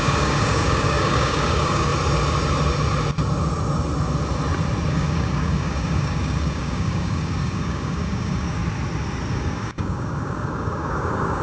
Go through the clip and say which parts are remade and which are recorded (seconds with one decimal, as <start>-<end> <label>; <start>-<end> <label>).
0.0-1.9 remade; 1.9-4.9 recorded; 4.9-8.6 remade; 8.6-9.3 recorded; 9.3-11.4 remade